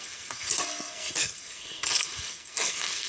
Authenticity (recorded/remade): remade